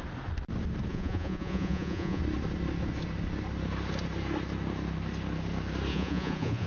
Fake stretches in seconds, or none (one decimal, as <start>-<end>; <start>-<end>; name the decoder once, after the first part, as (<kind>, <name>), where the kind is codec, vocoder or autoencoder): 0.9-2.2 (vocoder, Vocos); 5.9-6.7